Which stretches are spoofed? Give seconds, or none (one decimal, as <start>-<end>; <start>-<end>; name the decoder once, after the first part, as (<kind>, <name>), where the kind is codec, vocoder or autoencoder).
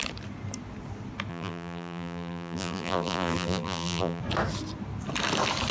1.3-4.2 (vocoder, BigVGAN v2)